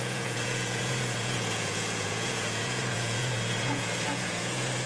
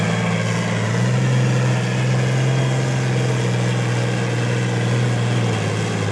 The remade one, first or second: first